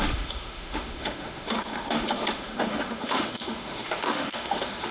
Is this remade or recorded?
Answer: remade